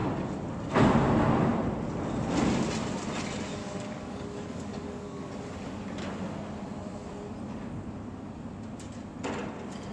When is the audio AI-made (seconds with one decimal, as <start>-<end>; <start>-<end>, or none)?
3.6-5.3